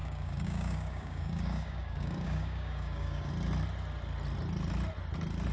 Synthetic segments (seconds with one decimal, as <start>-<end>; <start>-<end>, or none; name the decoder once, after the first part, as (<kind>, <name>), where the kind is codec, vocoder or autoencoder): 0.0-3.3 (codec, DAC)

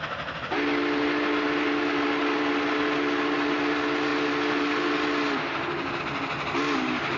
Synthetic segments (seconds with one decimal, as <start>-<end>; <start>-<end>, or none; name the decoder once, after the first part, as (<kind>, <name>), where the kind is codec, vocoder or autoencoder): none

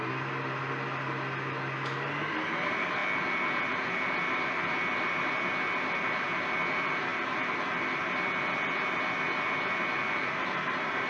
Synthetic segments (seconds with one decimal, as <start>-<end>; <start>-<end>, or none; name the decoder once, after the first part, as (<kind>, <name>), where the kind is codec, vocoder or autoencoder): none

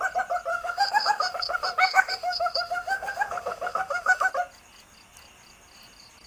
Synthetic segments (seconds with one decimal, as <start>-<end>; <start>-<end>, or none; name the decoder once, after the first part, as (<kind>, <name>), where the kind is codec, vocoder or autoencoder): 0.5-4.3 (autoencoder, DAC-VAE)

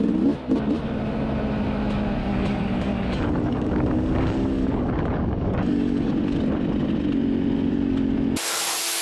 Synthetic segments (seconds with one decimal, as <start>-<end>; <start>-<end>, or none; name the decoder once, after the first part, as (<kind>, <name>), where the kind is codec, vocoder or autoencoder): 2.2-6.1 (codec, DAC)